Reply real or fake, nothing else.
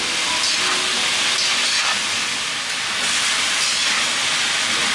real